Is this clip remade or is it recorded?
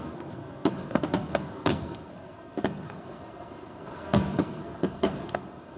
remade